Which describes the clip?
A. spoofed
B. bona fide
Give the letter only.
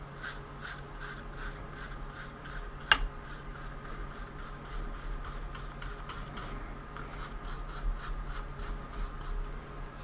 B